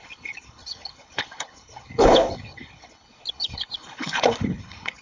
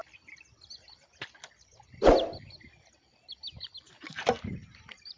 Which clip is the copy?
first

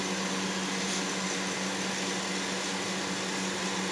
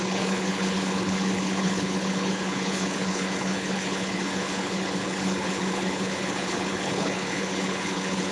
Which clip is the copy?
second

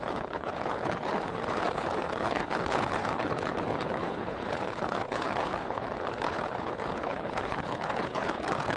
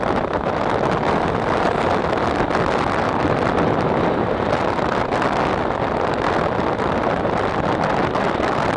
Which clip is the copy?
first